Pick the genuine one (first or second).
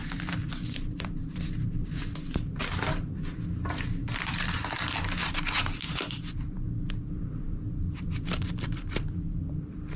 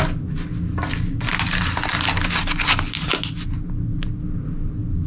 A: second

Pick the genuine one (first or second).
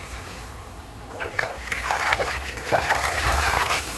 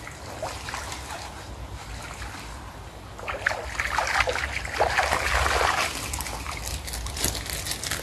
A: second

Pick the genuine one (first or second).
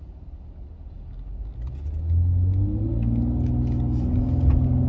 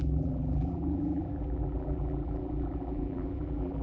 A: first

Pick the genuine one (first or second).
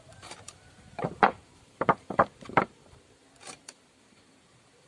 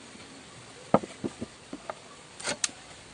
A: second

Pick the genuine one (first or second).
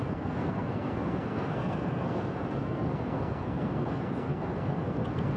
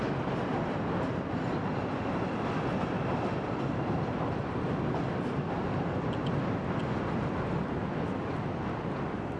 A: second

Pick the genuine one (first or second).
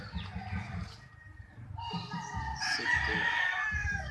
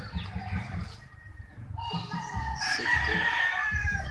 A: first